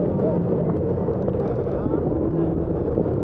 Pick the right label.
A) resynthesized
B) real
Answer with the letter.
B